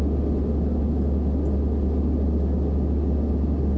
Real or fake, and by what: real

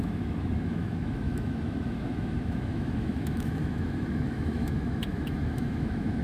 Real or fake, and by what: fake, autoencoder, DAC-VAE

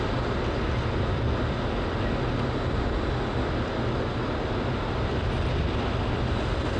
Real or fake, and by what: real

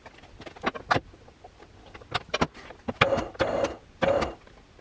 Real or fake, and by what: real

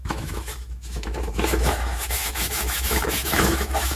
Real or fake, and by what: fake, autoencoder, DAC-VAE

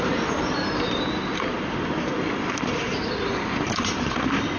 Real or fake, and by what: real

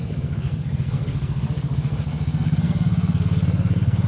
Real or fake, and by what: fake, codec, SNAC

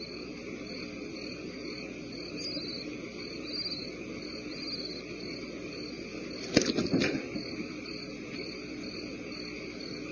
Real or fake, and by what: real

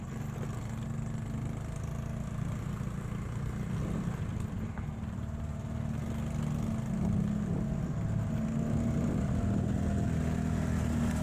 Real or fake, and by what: real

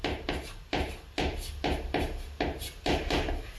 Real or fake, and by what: real